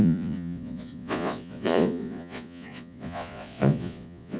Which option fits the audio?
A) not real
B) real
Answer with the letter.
A